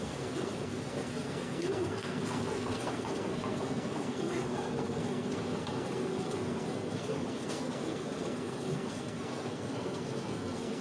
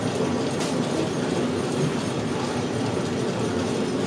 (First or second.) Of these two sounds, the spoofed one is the first